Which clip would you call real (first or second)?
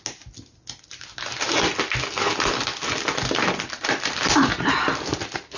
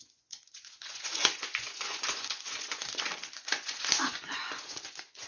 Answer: first